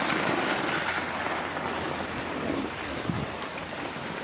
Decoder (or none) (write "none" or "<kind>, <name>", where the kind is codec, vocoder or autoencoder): none